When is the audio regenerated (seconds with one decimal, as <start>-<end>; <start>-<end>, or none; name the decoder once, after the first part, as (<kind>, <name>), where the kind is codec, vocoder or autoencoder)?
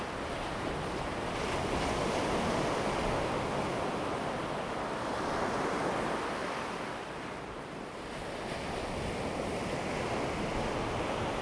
6.4-7.3 (vocoder, BigVGAN v2)